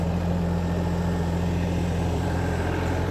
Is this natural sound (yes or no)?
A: no